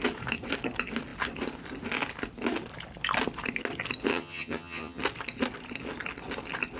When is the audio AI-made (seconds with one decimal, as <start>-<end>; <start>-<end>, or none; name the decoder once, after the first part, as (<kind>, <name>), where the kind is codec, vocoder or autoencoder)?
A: 4.1-5.0 (vocoder, HiFi-GAN)